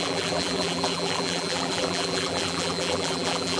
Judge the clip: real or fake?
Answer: fake